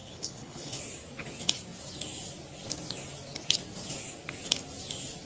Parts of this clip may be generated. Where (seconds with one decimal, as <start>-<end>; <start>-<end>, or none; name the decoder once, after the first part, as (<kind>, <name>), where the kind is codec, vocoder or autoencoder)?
0.0-0.8 (codec, HILCodec)